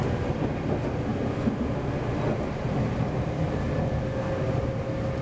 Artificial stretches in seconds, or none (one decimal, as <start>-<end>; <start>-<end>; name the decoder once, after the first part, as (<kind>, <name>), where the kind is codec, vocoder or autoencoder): none